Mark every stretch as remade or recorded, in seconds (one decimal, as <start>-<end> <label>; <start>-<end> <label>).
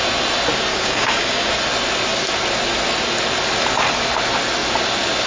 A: 0.0-0.7 recorded; 0.7-1.5 remade; 1.5-5.3 recorded